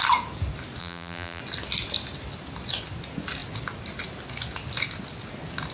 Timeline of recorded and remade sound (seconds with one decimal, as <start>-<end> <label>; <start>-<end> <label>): 0.0-0.8 recorded; 0.8-1.4 remade; 1.4-5.7 recorded